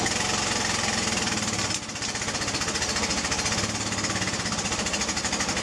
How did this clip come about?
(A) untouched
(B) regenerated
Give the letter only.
A